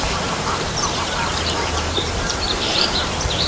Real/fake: fake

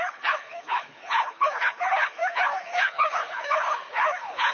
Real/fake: fake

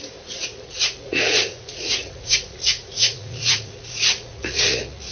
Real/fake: fake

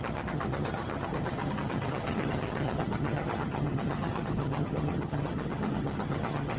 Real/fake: fake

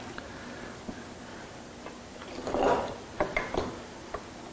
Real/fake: real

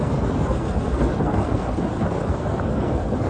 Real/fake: fake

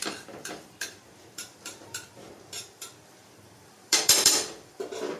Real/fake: fake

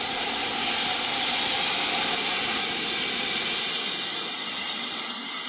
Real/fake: real